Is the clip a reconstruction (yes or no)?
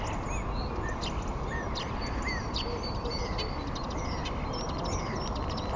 no